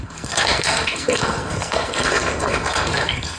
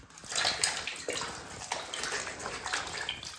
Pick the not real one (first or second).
first